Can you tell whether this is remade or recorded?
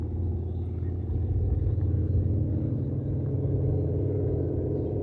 recorded